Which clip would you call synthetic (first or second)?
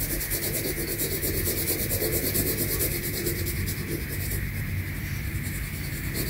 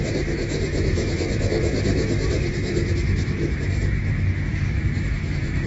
second